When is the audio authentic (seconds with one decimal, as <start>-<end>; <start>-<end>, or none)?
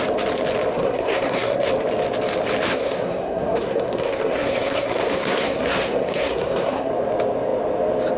0.0-0.7; 1.7-2.7; 6.9-8.2